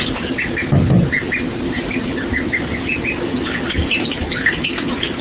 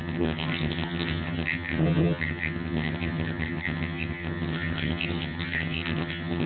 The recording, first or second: first